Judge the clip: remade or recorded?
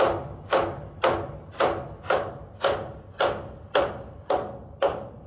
recorded